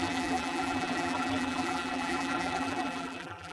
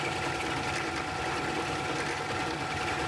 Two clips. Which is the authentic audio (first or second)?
second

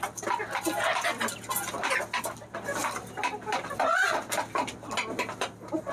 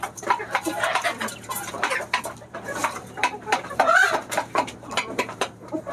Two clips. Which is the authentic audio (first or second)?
first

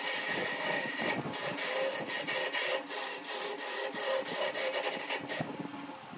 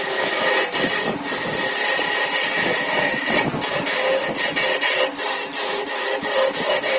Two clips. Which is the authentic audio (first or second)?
second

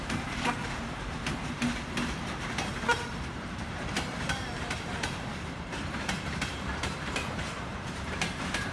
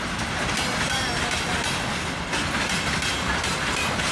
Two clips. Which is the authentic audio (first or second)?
second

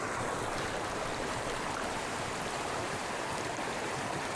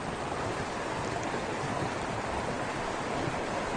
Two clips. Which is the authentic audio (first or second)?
second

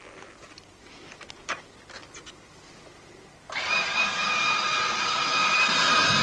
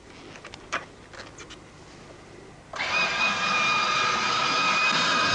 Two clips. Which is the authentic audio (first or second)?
second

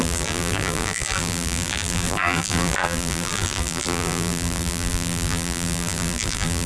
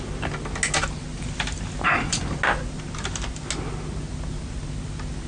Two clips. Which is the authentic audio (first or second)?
second